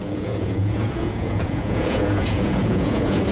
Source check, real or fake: fake